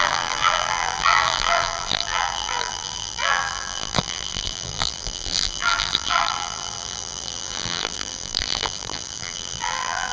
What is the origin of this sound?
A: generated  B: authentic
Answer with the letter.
A